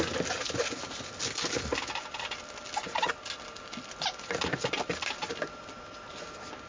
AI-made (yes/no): no